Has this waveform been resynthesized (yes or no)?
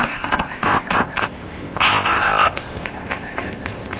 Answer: yes